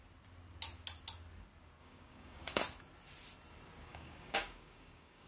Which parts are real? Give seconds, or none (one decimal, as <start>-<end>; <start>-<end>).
0.0-1.8; 2.6-3.9